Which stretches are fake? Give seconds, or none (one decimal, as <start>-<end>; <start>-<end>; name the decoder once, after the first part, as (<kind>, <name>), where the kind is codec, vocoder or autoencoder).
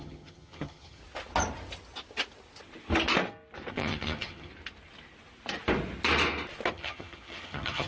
0.0-1.0 (vocoder, HiFi-GAN); 3.7-4.5; 6.7-7.9